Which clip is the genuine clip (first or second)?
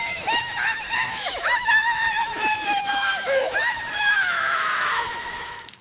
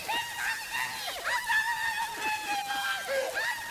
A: second